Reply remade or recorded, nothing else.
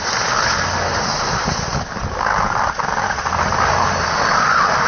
recorded